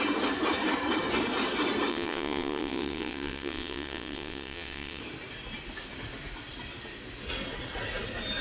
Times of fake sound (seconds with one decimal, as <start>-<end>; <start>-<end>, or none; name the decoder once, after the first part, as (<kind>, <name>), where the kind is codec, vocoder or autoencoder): 1.9-5.0 (vocoder, WaveNeXt)